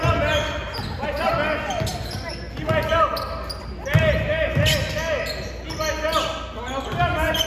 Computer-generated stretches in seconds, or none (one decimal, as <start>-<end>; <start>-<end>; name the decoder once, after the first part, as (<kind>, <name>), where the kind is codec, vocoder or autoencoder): none